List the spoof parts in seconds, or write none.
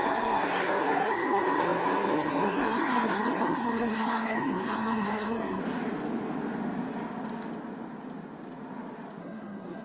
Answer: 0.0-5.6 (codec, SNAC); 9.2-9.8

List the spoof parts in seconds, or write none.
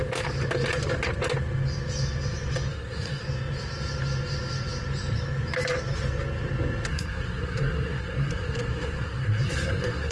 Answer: 2.7-3.2 (codec, SNAC); 6.9-10.1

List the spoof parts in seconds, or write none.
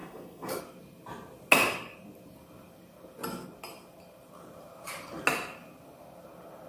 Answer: 0.0-0.6 (codec, SNAC)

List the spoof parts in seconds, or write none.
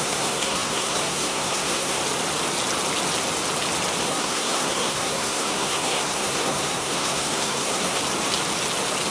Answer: 0.0-2.0 (codec, SNAC); 4.0-8.0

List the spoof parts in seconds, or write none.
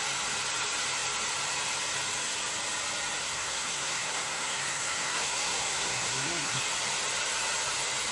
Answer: 3.2-6.6 (codec, SNAC)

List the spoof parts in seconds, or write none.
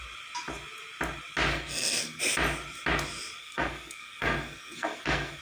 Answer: 1.5-2.2 (codec, SNAC); 3.4-5.4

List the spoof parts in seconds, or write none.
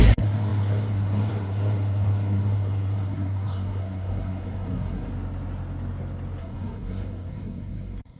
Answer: 0.0-5.1 (codec, SNAC); 6.4-8.2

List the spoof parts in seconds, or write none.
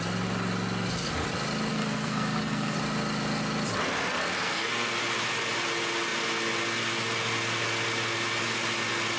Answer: 1.7-2.8 (codec, SNAC); 4.1-5.0